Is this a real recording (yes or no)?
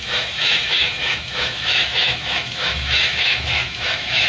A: no